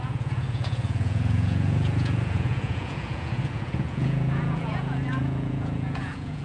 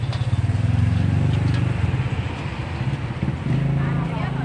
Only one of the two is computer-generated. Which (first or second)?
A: first